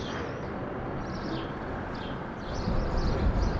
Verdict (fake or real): fake